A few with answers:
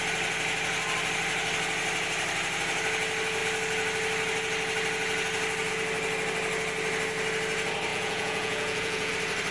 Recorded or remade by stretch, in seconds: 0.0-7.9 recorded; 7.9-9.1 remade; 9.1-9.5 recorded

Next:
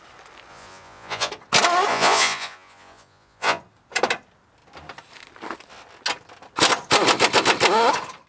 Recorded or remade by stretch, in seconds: 0.0-0.5 recorded; 0.5-1.3 remade; 1.3-1.9 recorded; 1.9-3.6 remade; 3.6-8.3 recorded

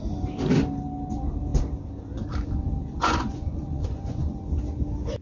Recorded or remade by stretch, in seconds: 0.0-2.9 recorded; 2.9-4.4 remade; 4.4-5.2 recorded

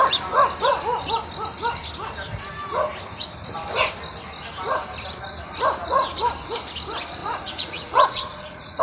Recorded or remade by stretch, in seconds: 0.0-7.2 recorded; 7.2-8.8 remade

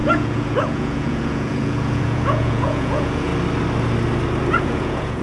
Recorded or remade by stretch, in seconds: 0.0-3.3 remade; 3.3-4.5 recorded; 4.5-5.2 remade